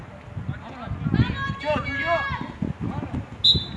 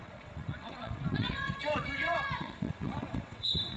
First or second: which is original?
first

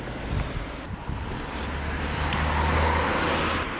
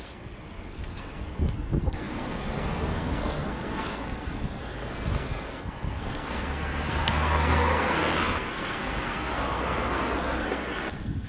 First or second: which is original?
first